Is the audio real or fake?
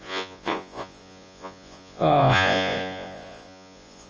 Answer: fake